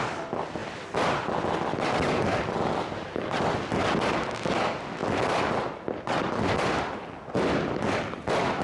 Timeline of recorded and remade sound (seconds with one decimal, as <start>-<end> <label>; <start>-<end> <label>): 0.0-8.6 recorded

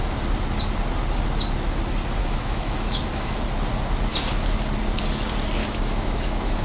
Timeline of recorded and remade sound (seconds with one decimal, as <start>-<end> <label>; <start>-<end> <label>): 0.0-2.2 recorded; 2.2-3.4 remade; 3.4-5.6 recorded; 5.6-6.6 remade